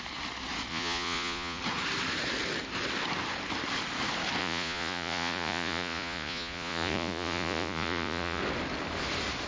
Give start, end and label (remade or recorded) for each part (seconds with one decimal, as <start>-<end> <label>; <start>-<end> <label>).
0.0-0.7 recorded; 0.7-1.6 remade; 1.6-4.4 recorded; 4.4-8.4 remade; 8.4-9.5 recorded